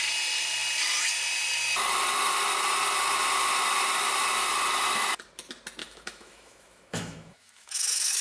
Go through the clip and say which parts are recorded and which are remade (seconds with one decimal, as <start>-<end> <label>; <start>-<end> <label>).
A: 0.0-5.8 recorded; 5.8-8.2 remade